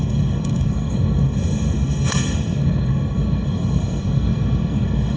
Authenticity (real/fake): fake